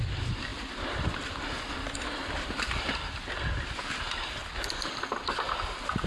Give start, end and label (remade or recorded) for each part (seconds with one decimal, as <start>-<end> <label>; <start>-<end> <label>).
0.0-6.1 recorded